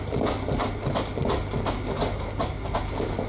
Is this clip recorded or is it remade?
recorded